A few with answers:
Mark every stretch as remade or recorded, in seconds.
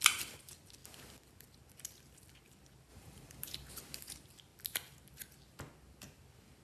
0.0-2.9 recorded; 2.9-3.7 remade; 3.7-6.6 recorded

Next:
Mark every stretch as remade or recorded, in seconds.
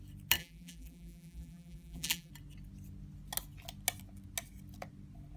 0.0-0.4 recorded; 0.4-2.3 remade; 2.3-5.4 recorded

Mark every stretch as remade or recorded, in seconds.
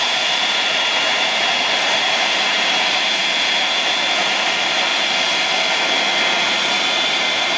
0.0-3.2 remade; 3.2-4.3 recorded; 4.3-4.9 remade; 4.9-6.6 recorded; 6.6-7.6 remade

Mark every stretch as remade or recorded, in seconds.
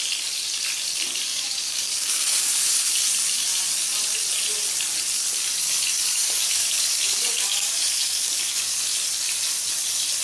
0.0-1.3 recorded; 1.3-2.9 remade; 2.9-6.1 recorded; 6.1-8.8 remade; 8.8-10.2 recorded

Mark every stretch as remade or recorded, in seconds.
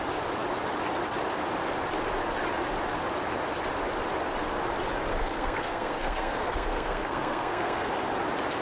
0.0-5.1 recorded; 5.1-7.9 remade; 7.9-8.6 recorded